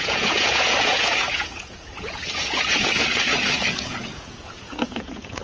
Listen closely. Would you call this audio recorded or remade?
remade